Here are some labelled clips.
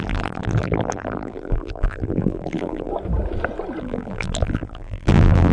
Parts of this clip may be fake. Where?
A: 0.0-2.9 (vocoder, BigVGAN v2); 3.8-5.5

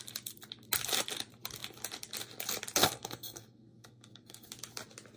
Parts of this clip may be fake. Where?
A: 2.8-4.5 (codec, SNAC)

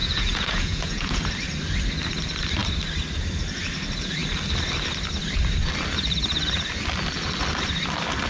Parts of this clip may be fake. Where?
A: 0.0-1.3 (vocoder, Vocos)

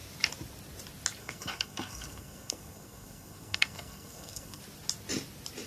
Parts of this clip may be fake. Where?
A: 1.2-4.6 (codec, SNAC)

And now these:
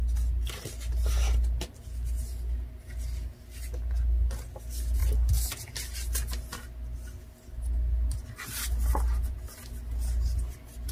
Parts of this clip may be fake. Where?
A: none

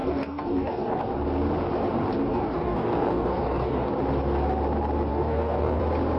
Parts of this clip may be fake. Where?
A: 0.0-1.0 (codec, DAC); 2.3-3.9; 5.1-5.8

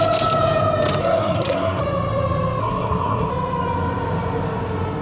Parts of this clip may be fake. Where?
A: 1.0-1.8 (codec, SNAC); 2.6-3.3

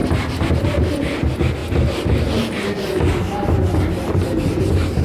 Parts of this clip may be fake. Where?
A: none